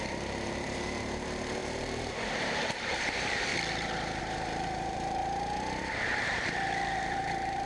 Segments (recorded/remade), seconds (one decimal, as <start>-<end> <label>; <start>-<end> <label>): 0.0-3.5 remade; 3.5-4.2 recorded; 4.2-5.2 remade; 5.2-5.8 recorded; 5.8-7.7 remade